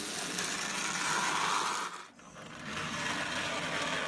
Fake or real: real